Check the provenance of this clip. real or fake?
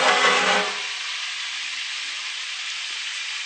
real